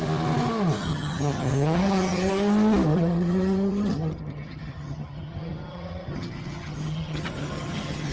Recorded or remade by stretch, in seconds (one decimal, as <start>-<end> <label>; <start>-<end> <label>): 0.0-0.8 recorded; 0.8-2.3 remade; 2.3-2.9 recorded; 2.9-8.1 remade